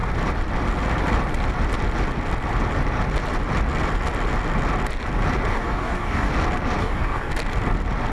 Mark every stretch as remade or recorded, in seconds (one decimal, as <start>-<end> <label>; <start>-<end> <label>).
0.0-5.5 recorded; 5.5-6.3 remade; 6.3-6.8 recorded; 6.8-7.3 remade; 7.3-8.1 recorded